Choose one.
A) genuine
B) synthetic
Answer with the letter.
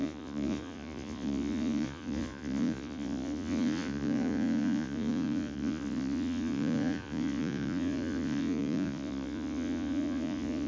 B